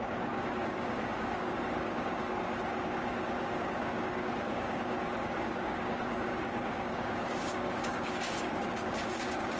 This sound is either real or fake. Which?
fake